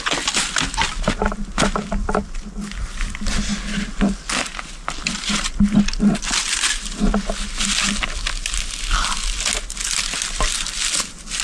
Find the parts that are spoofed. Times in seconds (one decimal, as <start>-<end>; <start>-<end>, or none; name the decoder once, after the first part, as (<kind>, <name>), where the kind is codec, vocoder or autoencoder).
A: none